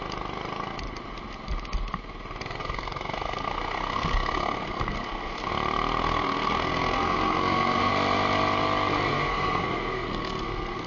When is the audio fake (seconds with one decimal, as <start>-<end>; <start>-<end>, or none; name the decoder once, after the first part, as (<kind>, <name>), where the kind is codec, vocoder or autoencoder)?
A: 2.6-5.5 (codec, SNAC); 6.0-7.9; 9.1-10.9